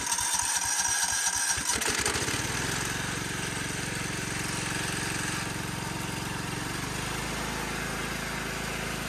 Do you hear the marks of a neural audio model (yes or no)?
no